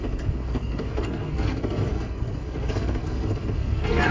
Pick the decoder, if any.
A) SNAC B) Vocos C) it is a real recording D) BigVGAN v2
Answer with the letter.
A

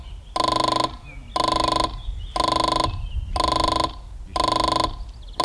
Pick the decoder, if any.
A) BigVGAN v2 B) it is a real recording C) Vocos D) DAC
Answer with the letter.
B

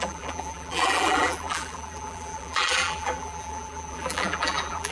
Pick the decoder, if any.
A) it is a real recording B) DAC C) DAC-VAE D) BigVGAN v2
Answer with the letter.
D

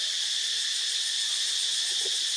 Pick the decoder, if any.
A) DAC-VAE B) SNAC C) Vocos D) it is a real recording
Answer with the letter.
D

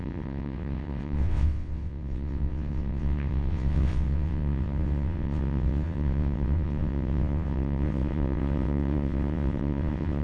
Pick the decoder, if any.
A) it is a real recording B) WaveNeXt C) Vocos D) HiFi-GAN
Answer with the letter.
B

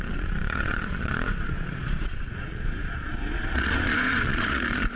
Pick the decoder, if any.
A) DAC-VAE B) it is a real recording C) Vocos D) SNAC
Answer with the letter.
C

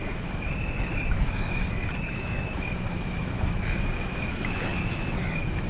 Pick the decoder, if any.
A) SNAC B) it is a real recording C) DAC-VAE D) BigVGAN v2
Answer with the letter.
C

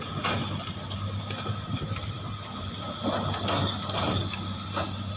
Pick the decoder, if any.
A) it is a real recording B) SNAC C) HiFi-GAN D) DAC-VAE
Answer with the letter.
A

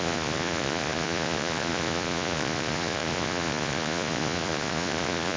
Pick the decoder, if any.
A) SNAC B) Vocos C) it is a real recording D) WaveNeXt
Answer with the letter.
B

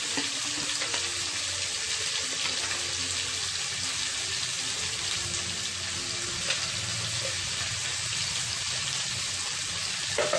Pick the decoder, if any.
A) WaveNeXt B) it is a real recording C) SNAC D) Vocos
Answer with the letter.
B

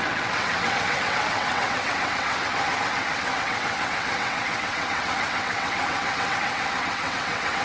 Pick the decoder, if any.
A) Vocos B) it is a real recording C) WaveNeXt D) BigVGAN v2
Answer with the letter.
C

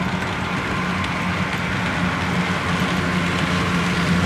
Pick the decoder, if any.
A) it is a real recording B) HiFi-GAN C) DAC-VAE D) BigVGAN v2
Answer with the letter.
A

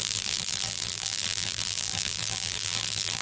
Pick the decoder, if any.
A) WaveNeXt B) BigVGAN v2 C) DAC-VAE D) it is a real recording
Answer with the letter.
B